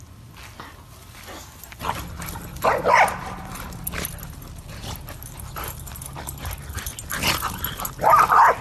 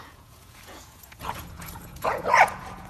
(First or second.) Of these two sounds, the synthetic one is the second